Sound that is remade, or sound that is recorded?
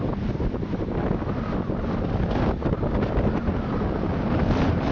recorded